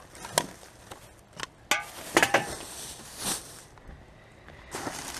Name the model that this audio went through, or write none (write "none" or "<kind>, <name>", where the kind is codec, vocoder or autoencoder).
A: none